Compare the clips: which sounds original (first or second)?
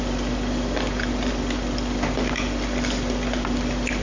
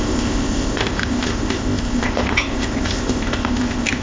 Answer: first